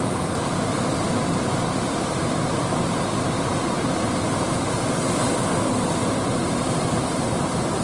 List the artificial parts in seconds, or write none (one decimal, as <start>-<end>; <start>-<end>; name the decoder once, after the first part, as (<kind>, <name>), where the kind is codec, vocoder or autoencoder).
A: none